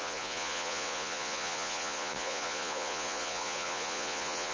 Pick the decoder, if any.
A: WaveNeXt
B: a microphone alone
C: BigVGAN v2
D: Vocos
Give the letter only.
D